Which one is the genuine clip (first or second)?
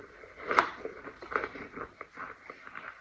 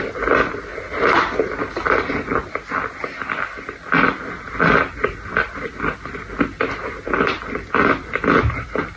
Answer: second